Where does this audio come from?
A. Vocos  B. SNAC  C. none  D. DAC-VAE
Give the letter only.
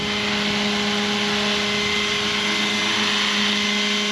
C